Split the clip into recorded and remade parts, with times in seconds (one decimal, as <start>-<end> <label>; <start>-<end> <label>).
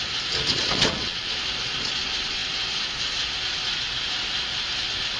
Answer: 0.0-0.5 recorded; 0.5-1.3 remade; 1.3-5.2 recorded